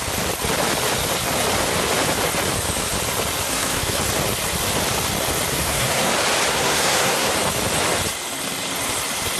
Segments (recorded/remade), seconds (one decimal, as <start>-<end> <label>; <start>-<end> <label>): 0.0-3.5 recorded; 3.5-4.0 remade; 4.0-5.6 recorded; 5.6-6.1 remade; 6.1-6.5 recorded; 6.5-7.3 remade; 7.3-9.4 recorded